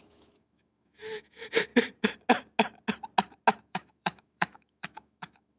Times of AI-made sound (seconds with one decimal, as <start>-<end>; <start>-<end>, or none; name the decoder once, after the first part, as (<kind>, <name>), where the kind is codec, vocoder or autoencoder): 0.0-1.7 (autoencoder, DAC-VAE); 3.6-5.6